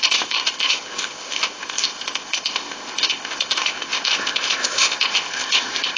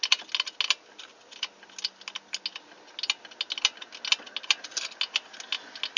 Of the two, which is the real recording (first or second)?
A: second